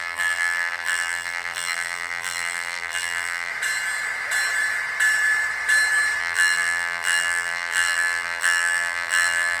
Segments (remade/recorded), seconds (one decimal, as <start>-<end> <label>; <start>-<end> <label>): 0.0-3.5 remade; 3.5-6.2 recorded; 6.2-9.6 remade